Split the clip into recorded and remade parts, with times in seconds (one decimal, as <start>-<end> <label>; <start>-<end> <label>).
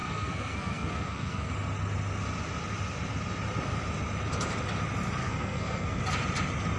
0.0-1.5 remade; 1.5-5.2 recorded; 5.2-6.0 remade; 6.0-6.8 recorded